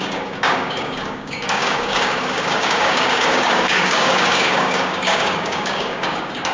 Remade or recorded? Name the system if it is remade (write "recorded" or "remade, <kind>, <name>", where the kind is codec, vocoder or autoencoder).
remade, codec, DAC